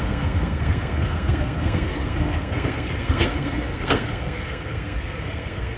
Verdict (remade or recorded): remade